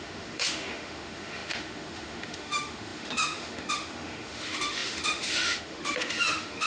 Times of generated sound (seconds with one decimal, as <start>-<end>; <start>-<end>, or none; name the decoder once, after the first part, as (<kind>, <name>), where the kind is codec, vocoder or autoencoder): 0.0-6.7 (autoencoder, DAC-VAE)

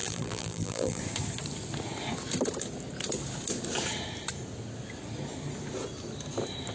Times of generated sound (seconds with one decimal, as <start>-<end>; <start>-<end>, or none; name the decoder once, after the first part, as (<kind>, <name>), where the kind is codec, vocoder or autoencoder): 0.0-1.0 (vocoder, BigVGAN v2)

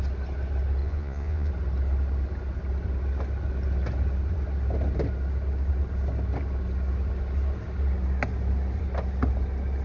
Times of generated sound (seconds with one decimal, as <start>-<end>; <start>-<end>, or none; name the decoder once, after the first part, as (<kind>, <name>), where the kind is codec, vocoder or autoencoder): 0.8-1.5 (vocoder, Vocos)

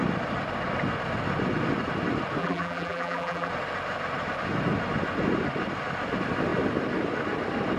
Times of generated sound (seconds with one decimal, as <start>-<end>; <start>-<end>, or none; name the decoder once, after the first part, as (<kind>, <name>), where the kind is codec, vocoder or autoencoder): 2.4-3.5 (vocoder, BigVGAN v2)